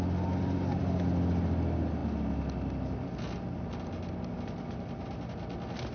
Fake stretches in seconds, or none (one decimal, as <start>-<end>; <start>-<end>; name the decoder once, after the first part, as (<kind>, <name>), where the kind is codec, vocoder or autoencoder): none